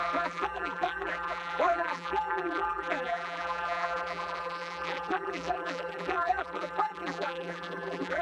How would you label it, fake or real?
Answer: fake